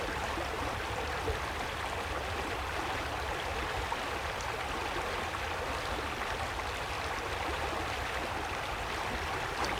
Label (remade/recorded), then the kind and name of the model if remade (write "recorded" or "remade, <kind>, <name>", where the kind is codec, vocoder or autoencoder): recorded